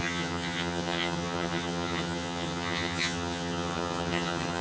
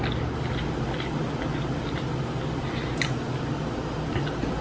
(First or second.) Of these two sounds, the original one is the second